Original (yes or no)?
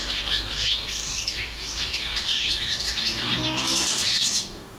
no